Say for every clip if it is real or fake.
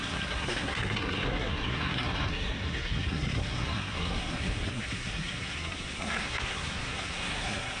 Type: fake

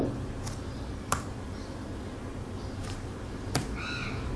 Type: real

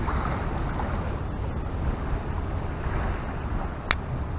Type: real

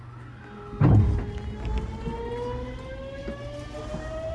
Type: real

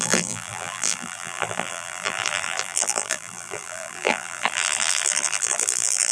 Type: fake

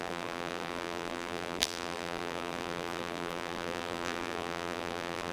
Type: fake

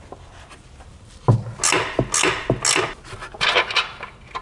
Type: real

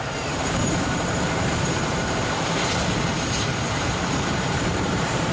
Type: fake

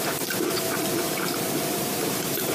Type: fake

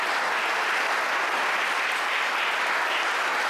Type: real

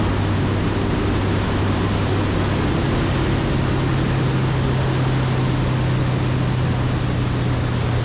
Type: real